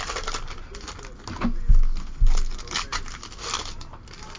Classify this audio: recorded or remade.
recorded